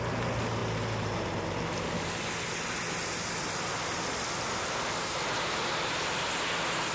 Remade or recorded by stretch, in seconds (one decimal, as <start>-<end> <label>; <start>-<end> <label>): 0.0-6.9 recorded